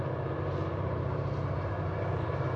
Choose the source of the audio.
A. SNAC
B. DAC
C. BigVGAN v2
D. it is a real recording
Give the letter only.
C